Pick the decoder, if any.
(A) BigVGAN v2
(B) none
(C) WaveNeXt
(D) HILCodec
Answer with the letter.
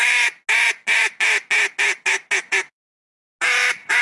B